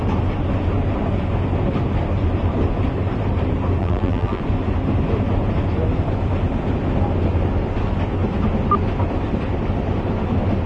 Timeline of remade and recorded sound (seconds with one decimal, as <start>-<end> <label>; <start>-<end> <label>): 0.0-3.8 recorded; 3.8-4.4 remade; 4.4-10.7 recorded